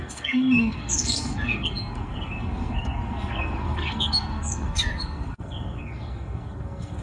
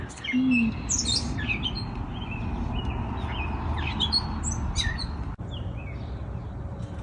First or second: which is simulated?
first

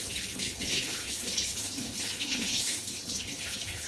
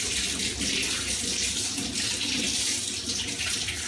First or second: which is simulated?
first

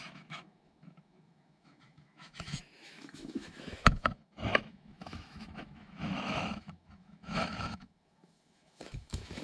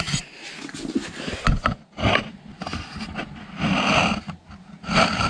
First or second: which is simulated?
first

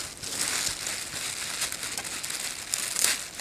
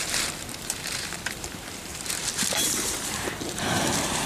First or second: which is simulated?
second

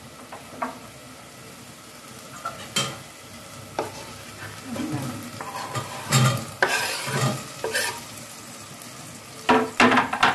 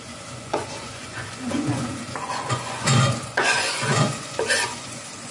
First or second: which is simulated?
second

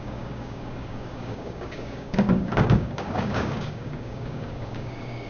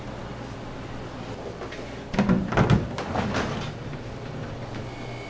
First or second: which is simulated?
first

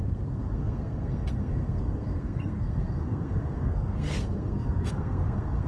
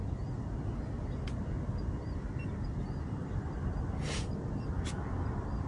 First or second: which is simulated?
first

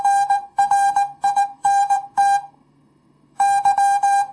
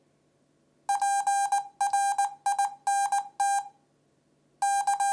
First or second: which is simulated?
first